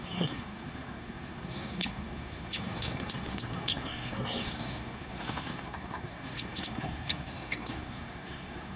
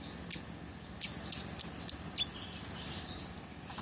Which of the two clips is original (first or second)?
second